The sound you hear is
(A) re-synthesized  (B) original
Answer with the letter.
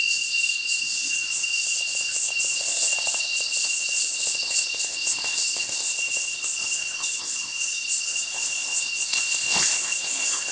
A